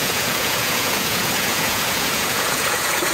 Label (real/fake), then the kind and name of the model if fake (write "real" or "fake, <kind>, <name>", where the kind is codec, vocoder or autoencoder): fake, vocoder, Vocos